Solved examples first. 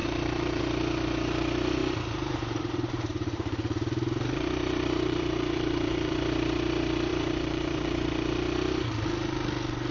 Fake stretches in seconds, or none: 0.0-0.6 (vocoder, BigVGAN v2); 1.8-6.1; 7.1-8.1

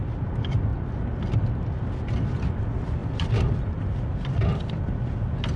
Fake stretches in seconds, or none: 3.0-4.0 (vocoder, BigVGAN v2)

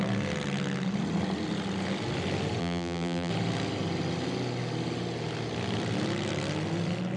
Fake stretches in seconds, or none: 2.6-3.3 (vocoder, BigVGAN v2)

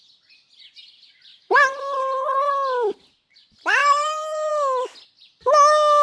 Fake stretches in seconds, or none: 1.3-2.5 (vocoder, BigVGAN v2); 3.8-4.5

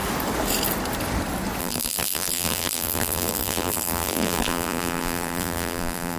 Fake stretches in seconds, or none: 1.6-6.2 (vocoder, BigVGAN v2)

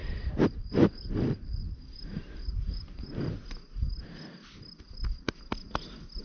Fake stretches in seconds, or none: 0.0-3.2 (vocoder, BigVGAN v2)

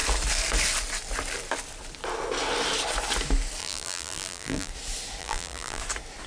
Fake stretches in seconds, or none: 3.6-4.7 (vocoder, BigVGAN v2); 5.2-5.8